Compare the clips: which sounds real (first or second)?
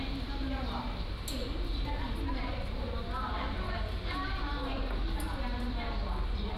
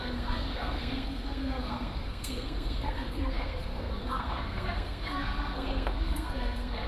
first